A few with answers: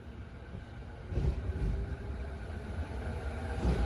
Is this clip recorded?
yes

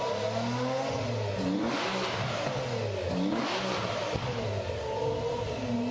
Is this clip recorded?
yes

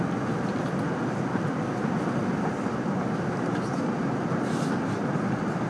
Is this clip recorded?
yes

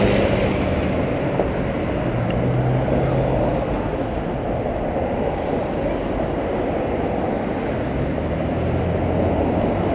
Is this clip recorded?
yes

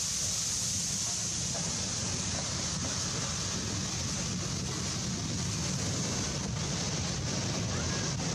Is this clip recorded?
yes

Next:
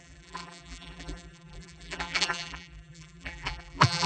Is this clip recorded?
no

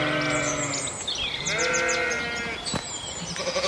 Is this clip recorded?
yes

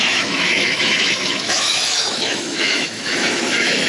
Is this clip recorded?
no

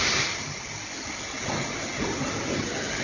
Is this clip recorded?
yes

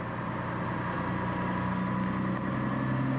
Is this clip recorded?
yes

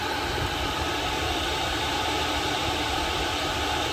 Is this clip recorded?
yes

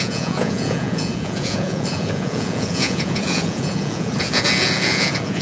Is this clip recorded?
no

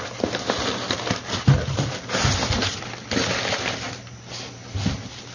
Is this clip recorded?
yes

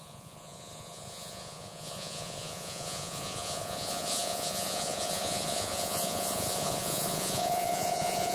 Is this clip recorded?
no